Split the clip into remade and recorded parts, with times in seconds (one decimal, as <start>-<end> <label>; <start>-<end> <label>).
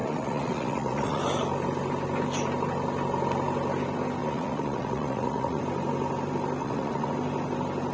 0.0-1.2 remade; 1.2-4.2 recorded; 4.2-5.6 remade; 5.6-6.6 recorded; 6.6-7.1 remade; 7.1-7.9 recorded